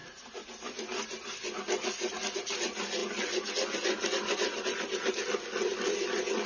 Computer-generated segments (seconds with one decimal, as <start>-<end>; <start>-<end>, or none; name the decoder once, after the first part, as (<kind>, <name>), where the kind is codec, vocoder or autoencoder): none